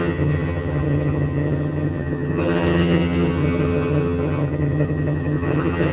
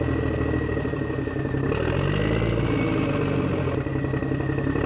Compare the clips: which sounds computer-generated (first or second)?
first